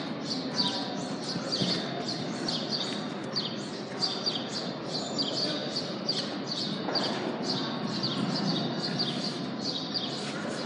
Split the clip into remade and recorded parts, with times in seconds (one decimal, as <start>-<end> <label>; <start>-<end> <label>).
0.0-10.7 recorded